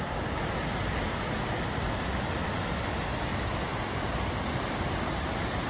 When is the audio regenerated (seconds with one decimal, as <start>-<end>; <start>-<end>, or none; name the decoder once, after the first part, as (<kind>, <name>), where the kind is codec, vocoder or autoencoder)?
none